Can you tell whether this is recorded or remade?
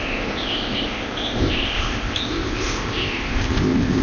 remade